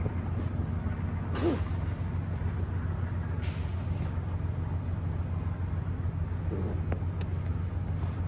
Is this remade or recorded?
recorded